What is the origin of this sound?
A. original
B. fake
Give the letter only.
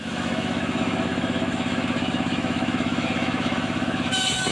B